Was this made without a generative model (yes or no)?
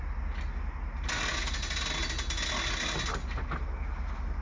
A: yes